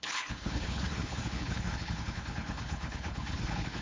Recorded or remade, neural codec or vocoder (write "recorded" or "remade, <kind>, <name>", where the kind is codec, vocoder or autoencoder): remade, codec, HILCodec